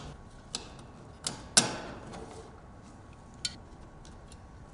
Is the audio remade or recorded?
recorded